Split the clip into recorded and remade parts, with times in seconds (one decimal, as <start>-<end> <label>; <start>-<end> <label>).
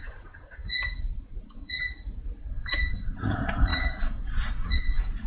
0.0-5.3 remade